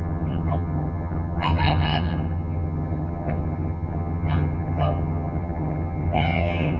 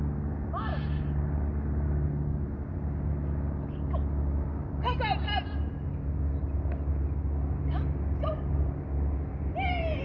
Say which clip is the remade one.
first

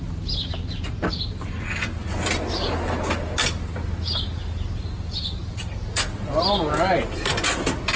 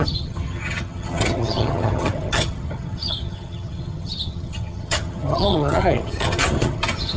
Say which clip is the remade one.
second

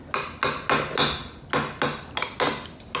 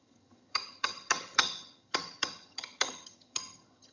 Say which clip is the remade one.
second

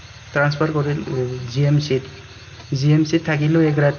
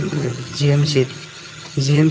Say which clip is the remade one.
second